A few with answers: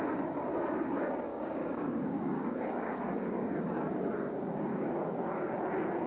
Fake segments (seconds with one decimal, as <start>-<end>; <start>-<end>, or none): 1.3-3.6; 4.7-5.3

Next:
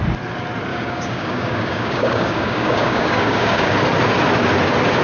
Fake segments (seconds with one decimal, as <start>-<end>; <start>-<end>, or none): 0.7-3.7

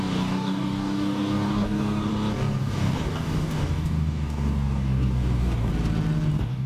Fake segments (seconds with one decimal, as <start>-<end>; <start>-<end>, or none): 0.0-2.1; 2.6-5.7; 6.3-6.7

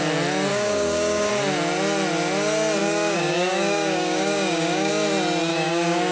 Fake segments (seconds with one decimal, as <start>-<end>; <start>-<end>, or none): 0.5-1.3; 2.8-4.9; 5.5-6.1

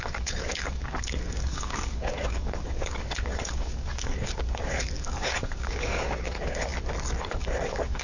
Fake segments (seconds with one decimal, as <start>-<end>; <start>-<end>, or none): 0.0-6.7; 7.2-8.0

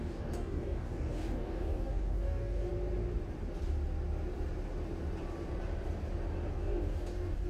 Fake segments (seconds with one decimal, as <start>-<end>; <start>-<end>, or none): 0.0-2.7; 6.5-7.5